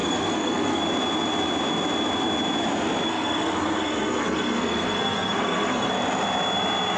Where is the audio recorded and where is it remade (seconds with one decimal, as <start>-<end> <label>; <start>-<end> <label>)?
0.0-0.8 remade; 0.8-3.1 recorded; 3.1-5.9 remade; 5.9-7.0 recorded